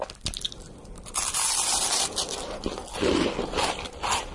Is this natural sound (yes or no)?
yes